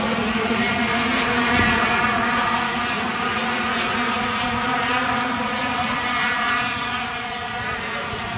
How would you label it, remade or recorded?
remade